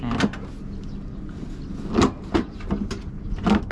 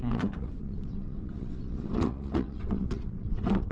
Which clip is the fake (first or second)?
second